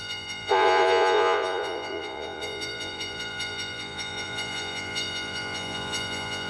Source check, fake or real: fake